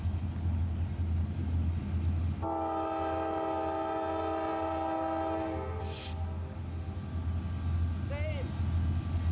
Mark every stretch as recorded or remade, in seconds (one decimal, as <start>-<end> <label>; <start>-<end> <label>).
0.0-9.3 recorded

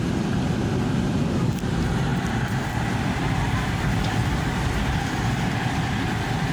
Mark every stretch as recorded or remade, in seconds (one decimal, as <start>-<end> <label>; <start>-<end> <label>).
0.0-2.1 recorded; 2.1-6.0 remade; 6.0-6.5 recorded

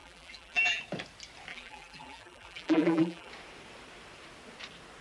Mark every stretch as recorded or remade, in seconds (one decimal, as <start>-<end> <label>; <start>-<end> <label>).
0.0-0.8 remade; 0.8-1.5 recorded; 1.5-3.3 remade; 3.3-5.0 recorded